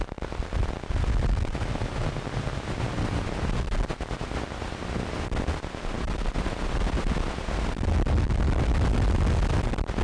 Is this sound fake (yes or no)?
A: no